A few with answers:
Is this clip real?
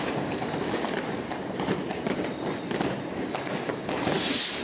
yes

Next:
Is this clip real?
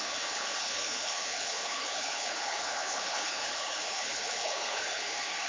no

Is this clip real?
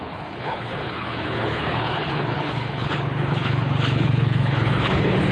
no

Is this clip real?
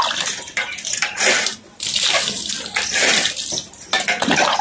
yes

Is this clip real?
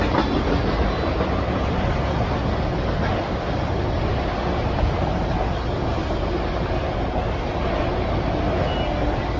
yes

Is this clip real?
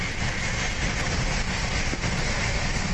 yes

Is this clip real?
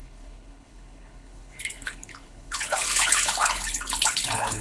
no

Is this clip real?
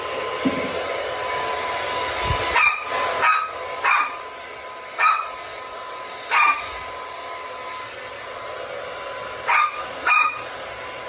yes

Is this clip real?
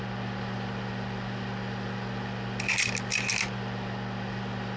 yes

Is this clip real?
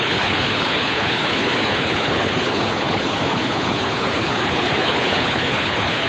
no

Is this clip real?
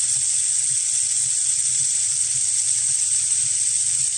yes